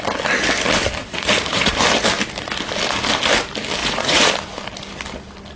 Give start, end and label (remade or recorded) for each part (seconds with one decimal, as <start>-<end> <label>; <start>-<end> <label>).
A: 0.0-1.0 recorded; 1.0-1.7 remade; 1.7-3.8 recorded; 3.8-4.3 remade; 4.3-5.6 recorded